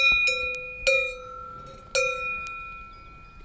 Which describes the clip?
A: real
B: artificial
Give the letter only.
A